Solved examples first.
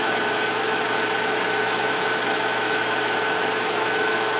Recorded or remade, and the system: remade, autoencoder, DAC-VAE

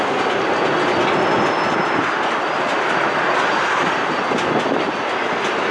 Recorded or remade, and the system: recorded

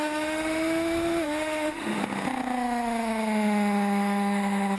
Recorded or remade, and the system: remade, autoencoder, DAC-VAE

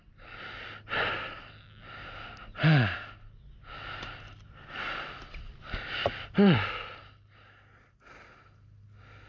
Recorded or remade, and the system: recorded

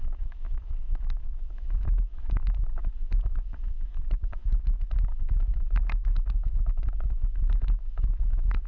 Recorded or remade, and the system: remade, autoencoder, DAC-VAE